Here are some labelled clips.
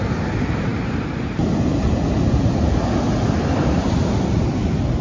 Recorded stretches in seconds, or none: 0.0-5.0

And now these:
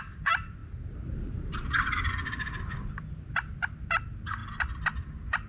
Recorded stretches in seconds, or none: 0.0-5.5